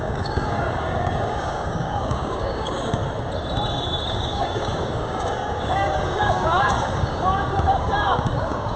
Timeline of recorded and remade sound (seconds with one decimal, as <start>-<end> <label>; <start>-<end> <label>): 0.0-3.0 remade; 3.0-4.0 recorded; 4.0-8.8 remade

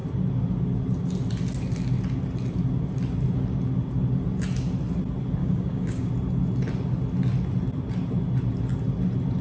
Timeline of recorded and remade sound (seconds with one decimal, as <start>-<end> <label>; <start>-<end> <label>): 0.0-5.4 recorded; 5.4-6.1 remade; 6.1-9.4 recorded

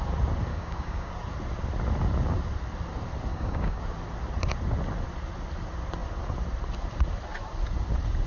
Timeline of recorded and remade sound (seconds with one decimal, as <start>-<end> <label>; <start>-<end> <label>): 0.0-0.5 recorded; 0.5-1.1 remade; 1.1-3.3 recorded; 3.3-3.8 remade; 3.8-8.3 recorded

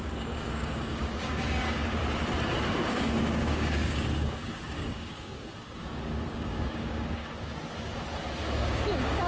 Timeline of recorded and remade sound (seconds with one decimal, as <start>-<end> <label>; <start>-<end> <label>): 0.0-2.0 remade; 2.0-2.7 recorded; 2.7-7.5 remade; 7.5-8.4 recorded; 8.4-9.3 remade